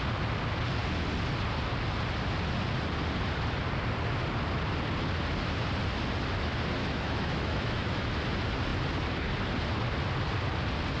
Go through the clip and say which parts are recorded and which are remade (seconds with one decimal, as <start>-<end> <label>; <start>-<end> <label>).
0.0-6.8 recorded; 6.8-8.1 remade; 8.1-11.0 recorded